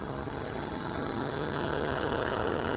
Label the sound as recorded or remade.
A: remade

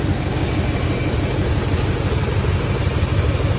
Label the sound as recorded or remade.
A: recorded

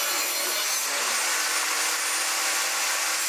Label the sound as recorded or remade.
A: recorded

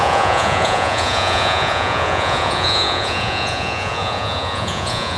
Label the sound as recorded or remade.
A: remade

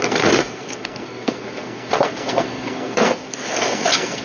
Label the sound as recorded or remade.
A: remade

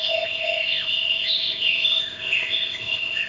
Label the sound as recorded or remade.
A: remade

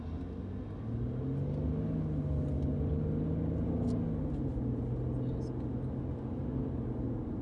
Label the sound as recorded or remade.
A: recorded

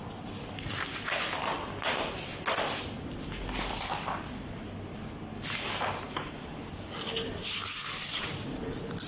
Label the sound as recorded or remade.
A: recorded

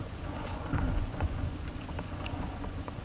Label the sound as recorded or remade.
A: remade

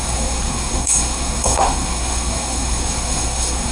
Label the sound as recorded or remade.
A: remade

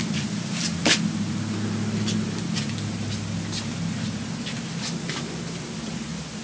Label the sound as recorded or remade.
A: recorded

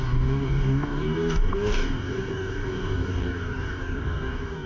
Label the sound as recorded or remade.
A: remade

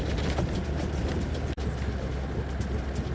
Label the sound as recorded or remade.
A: recorded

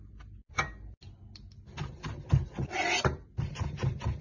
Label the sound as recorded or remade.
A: recorded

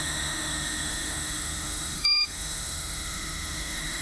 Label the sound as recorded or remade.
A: remade